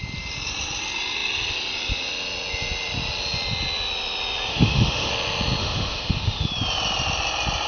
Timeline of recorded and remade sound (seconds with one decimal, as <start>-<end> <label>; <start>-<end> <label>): 0.0-4.5 recorded; 4.5-5.1 remade; 5.1-5.6 recorded; 5.6-6.5 remade; 6.5-7.7 recorded

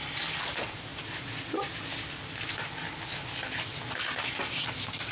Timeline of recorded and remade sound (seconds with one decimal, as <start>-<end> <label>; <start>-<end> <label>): 0.0-5.1 recorded

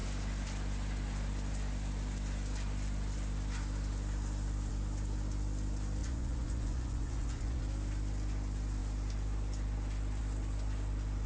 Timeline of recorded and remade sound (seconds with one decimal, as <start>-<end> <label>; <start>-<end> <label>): 0.0-6.0 recorded; 6.0-7.6 remade; 7.6-11.3 recorded

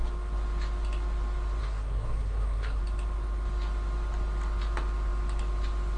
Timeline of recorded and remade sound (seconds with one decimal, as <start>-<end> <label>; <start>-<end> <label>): 0.0-1.6 recorded; 1.6-2.8 remade; 2.8-6.0 recorded

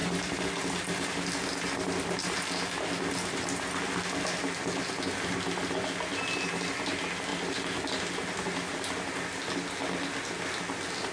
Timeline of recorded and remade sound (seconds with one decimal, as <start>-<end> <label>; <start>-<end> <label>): 0.0-11.1 recorded

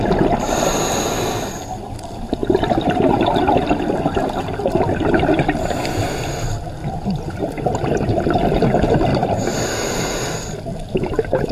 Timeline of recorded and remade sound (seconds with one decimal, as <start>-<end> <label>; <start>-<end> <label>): 0.0-2.4 recorded; 2.4-3.4 remade; 3.4-6.8 recorded; 6.8-7.6 remade; 7.6-9.1 recorded; 9.1-10.0 remade; 10.0-11.5 recorded

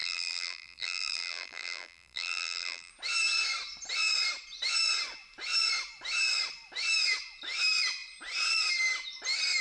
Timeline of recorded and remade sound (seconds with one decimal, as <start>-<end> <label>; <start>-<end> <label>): 0.0-2.9 remade; 2.9-9.6 recorded

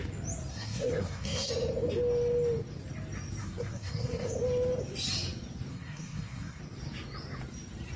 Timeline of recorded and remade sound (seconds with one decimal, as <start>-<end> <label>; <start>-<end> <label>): 0.0-0.5 recorded; 0.5-1.5 remade; 1.5-3.4 recorded; 3.4-4.3 remade; 4.3-5.7 recorded; 5.7-6.6 remade; 6.6-8.0 recorded